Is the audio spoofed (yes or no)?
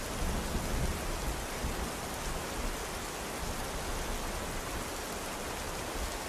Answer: no